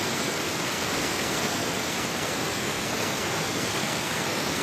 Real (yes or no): no